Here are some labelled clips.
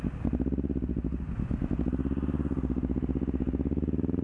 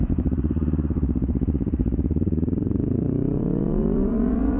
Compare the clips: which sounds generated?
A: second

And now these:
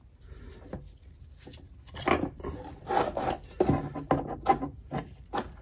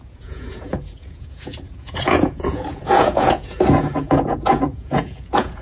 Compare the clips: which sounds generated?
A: second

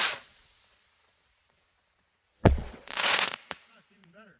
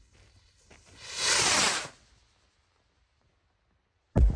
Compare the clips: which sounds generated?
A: first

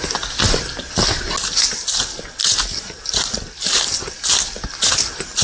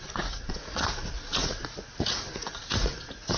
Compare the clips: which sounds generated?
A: second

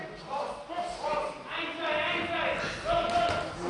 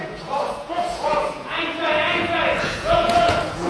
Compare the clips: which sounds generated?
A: second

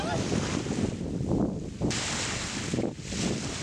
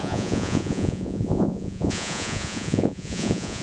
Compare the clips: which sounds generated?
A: second